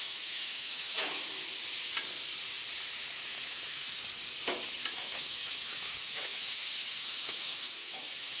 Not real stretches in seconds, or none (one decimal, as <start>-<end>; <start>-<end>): 0.0-1.3; 3.3-4.0; 4.9-8.4